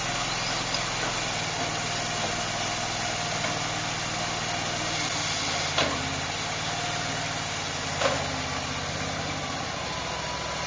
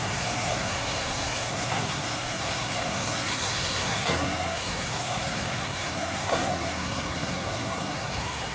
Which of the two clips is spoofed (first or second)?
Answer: second